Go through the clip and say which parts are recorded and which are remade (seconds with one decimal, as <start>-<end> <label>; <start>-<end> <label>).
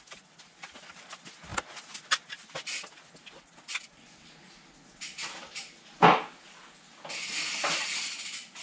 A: 0.0-8.6 recorded